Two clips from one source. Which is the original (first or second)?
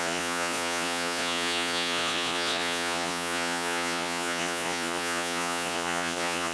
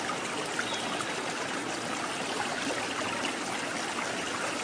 second